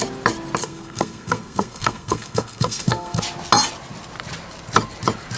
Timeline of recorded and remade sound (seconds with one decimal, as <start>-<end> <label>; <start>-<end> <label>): 0.0-0.6 recorded; 0.6-3.2 remade; 3.2-5.4 recorded